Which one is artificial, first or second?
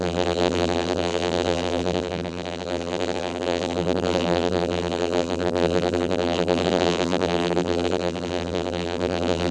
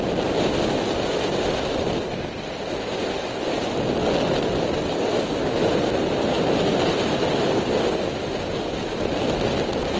first